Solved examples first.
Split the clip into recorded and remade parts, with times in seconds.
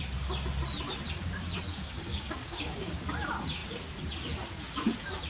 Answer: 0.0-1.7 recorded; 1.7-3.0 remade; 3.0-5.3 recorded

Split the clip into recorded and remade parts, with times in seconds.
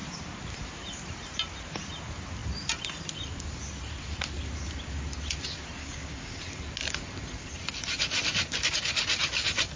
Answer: 0.0-5.8 recorded; 5.8-6.4 remade; 6.4-9.8 recorded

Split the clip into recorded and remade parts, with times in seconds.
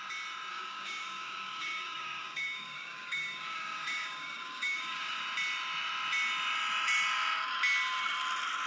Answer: 0.0-0.5 recorded; 0.5-5.2 remade; 5.2-8.7 recorded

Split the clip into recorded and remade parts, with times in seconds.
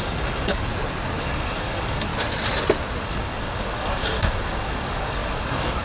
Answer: 0.0-0.7 remade; 0.7-1.2 recorded; 1.2-2.1 remade; 2.1-3.0 recorded; 3.0-5.8 remade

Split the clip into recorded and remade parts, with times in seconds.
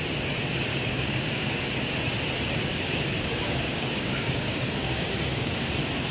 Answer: 0.0-0.7 recorded; 0.7-1.7 remade; 1.7-2.7 recorded; 2.7-5.6 remade; 5.6-6.1 recorded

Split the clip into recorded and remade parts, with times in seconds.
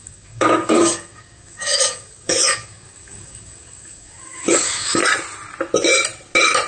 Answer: 0.0-5.0 remade; 5.0-6.7 recorded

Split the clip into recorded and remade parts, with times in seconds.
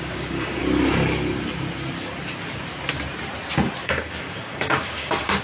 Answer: 0.0-0.6 remade; 0.6-3.8 recorded; 3.8-5.4 remade